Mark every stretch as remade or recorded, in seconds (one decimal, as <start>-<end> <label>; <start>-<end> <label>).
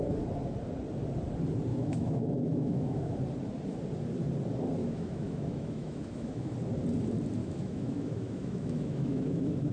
0.0-1.7 recorded; 1.7-3.2 remade; 3.2-4.8 recorded; 4.8-6.5 remade; 6.5-7.4 recorded; 7.4-9.7 remade